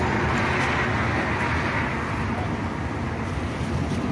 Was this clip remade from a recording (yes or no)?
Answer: no